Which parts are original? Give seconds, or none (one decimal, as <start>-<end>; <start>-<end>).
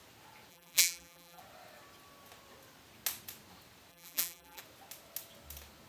0.0-0.5; 1.4-3.9; 4.6-5.9